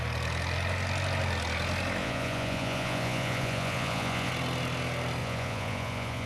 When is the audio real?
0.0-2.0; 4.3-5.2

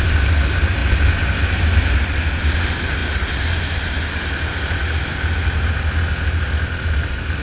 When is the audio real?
0.0-7.4

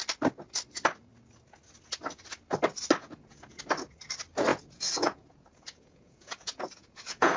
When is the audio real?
0.0-3.0; 3.6-4.5

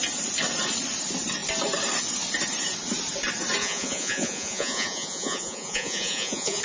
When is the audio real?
0.0-3.6